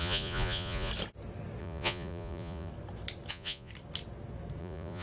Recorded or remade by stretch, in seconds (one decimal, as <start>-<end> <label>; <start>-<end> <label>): 0.0-0.9 remade; 0.9-1.6 recorded; 1.6-2.7 remade; 2.7-3.3 recorded; 3.3-3.7 remade; 3.7-4.6 recorded; 4.6-5.0 remade